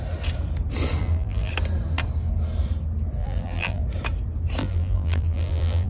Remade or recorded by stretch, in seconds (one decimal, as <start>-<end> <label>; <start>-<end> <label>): 0.0-1.0 recorded; 1.0-1.5 remade; 1.5-3.2 recorded; 3.2-3.8 remade; 3.8-4.6 recorded; 4.6-5.9 remade